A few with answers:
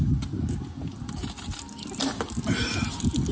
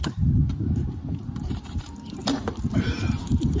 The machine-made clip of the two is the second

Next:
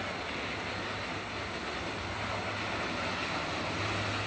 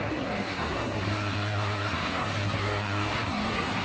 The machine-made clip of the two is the second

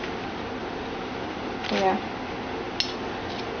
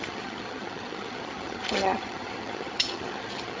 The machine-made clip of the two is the second